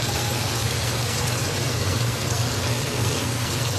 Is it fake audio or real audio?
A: fake